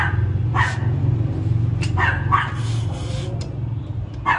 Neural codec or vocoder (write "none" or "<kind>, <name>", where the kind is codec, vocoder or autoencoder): none